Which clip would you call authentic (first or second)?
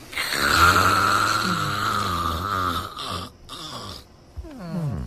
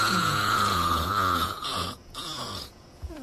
first